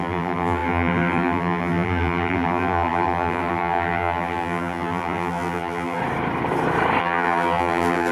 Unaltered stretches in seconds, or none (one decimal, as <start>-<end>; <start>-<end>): 6.0-7.0